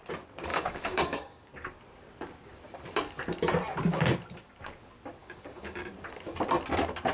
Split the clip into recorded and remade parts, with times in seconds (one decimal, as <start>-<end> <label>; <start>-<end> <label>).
0.0-0.5 recorded; 0.5-1.5 remade; 1.5-5.2 recorded; 5.2-5.9 remade; 5.9-7.1 recorded